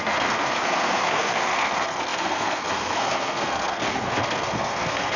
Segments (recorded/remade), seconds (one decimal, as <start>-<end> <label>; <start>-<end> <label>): 0.0-5.2 remade